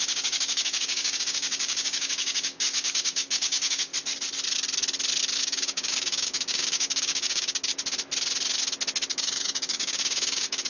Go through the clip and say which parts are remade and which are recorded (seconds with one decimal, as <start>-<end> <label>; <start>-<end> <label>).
0.0-3.9 remade; 3.9-5.4 recorded; 5.4-7.7 remade; 7.7-9.1 recorded; 9.1-10.7 remade